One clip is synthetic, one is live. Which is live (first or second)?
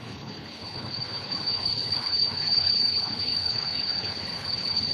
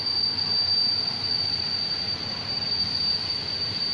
second